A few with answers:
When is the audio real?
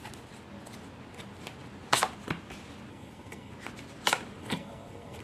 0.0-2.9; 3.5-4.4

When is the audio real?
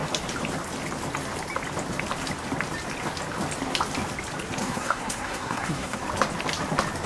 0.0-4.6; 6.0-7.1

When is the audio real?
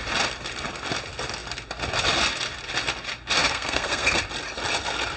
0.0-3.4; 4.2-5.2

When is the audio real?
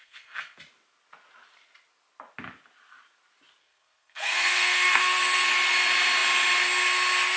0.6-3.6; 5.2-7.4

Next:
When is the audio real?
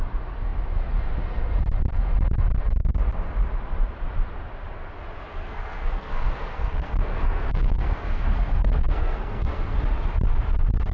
0.0-5.3; 9.8-10.9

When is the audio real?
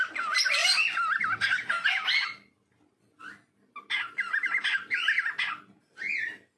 0.0-6.6